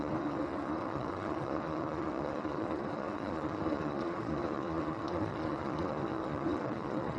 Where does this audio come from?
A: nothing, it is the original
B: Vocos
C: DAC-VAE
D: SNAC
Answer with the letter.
B